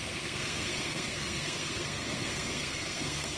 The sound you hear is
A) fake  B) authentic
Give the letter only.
A